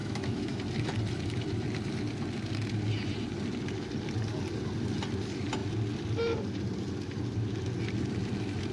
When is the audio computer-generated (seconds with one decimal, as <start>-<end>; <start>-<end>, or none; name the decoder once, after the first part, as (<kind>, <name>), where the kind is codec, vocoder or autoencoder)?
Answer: 0.0-0.6 (autoencoder, DAC-VAE)